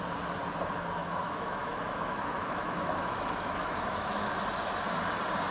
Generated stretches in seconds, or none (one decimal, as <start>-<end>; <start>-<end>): 1.0-4.3

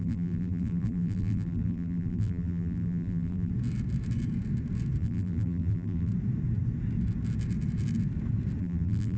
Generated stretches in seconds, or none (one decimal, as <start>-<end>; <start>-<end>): 0.0-3.5; 5.0-6.1; 8.6-9.2

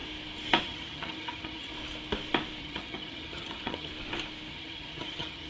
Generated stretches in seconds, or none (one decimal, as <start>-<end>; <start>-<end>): 0.6-1.7; 2.6-3.9; 4.5-5.5